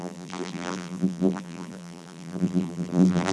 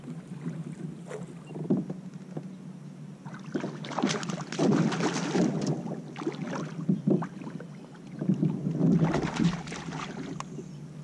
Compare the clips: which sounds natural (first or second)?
second